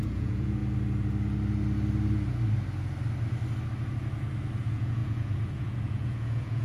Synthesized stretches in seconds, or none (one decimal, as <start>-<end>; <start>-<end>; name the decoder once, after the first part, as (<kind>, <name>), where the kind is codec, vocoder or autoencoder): 0.0-0.6 (vocoder, Vocos); 4.6-6.6